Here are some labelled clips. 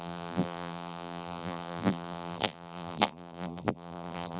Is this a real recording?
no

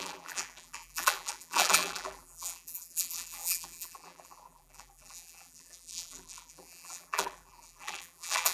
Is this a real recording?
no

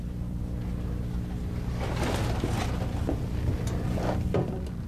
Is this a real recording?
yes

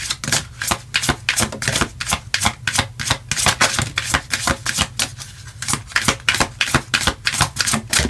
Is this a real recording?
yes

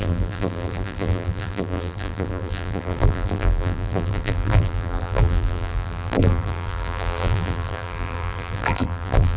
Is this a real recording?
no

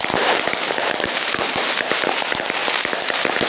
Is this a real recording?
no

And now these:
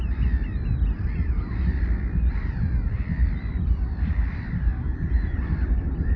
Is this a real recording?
no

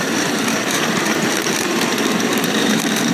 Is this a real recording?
no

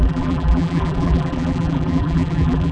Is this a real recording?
no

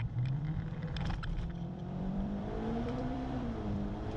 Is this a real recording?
no